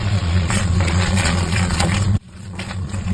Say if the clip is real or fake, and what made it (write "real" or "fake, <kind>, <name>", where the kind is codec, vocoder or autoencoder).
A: fake, vocoder, Vocos